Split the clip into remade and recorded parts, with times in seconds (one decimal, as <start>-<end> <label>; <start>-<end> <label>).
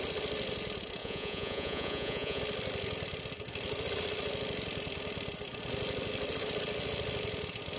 0.0-1.0 recorded; 1.0-2.4 remade; 2.4-7.8 recorded